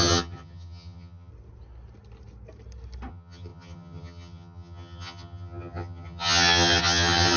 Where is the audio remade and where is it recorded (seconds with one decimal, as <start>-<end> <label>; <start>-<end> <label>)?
0.0-1.3 remade; 1.3-3.1 recorded; 3.1-7.4 remade